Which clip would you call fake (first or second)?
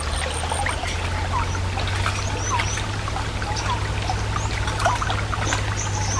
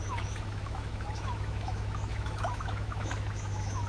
second